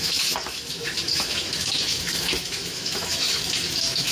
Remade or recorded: remade